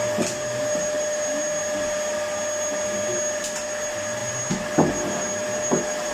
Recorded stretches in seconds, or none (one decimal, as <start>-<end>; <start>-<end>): 0.0-6.1